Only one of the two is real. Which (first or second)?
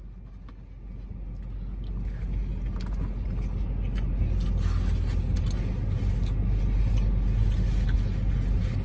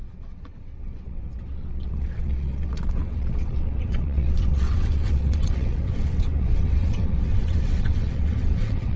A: first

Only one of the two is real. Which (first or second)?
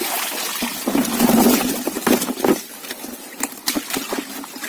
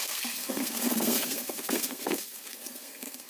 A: first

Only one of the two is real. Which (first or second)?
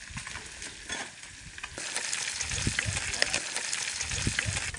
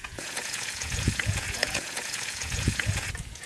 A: first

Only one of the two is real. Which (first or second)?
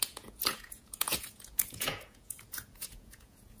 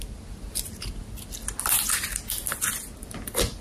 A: second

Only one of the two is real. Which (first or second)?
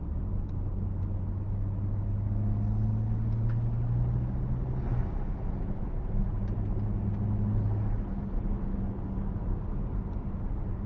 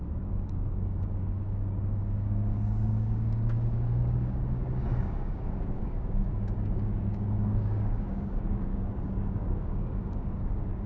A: first